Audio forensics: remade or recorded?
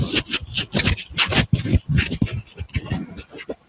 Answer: recorded